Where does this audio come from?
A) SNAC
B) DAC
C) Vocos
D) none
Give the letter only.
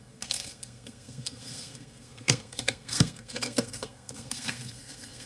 A